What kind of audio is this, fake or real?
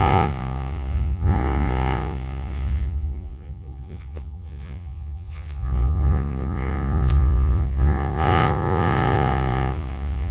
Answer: fake